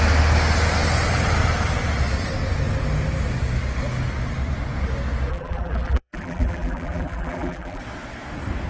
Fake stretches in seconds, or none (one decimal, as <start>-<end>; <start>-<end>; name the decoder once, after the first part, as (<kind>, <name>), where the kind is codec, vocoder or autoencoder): 5.3-7.8 (vocoder, BigVGAN v2)

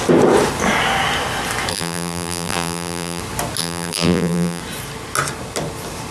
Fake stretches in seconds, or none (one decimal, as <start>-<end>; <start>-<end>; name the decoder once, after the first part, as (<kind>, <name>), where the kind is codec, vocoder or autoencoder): 1.7-3.2 (vocoder, BigVGAN v2); 3.6-4.6